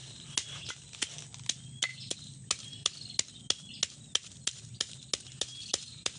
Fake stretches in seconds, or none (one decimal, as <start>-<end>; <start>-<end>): none